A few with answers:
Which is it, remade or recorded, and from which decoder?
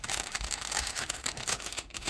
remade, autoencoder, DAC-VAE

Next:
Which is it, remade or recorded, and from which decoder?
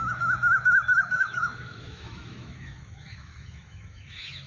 remade, autoencoder, DAC-VAE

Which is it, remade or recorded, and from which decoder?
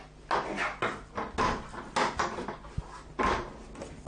recorded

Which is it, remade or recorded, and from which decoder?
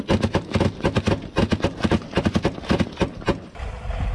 recorded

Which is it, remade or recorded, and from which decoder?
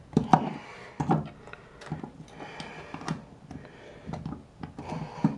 recorded